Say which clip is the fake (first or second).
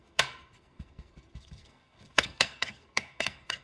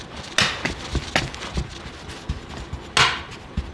first